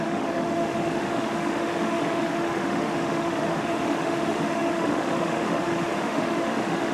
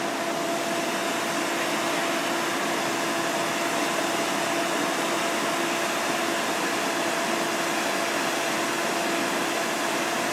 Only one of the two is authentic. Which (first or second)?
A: second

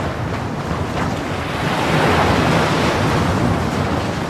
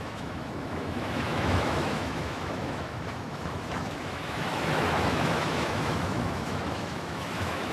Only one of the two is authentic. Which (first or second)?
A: first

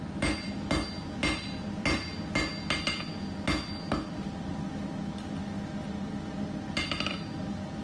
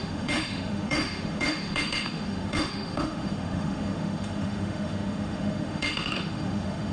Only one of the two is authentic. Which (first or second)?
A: first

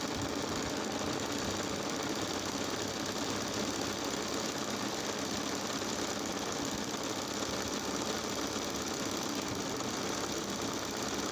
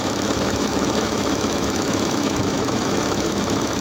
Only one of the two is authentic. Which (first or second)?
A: first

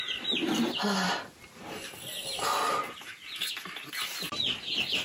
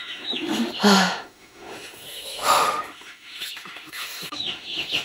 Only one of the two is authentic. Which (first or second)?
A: first